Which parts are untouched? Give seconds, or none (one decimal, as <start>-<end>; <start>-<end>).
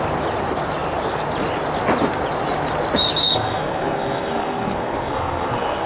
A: 0.0-3.2